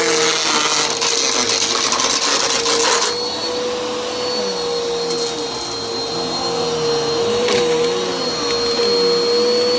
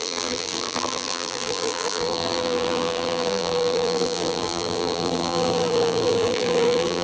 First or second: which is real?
first